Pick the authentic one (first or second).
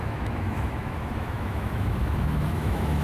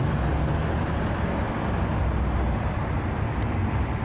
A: second